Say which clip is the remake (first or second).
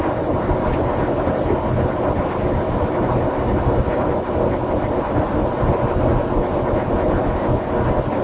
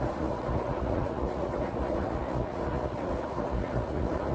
second